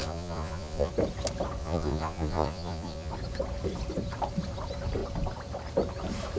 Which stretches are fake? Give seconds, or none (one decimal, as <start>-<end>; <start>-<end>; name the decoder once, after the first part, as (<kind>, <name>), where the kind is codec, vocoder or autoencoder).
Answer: 0.0-0.9 (vocoder, Vocos); 1.6-3.1